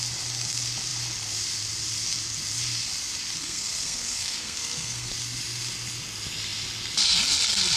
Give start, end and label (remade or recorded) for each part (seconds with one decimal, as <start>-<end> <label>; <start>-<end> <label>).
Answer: 0.0-3.4 recorded; 3.4-5.1 remade; 5.1-7.8 recorded